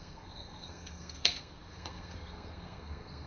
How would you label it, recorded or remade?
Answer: remade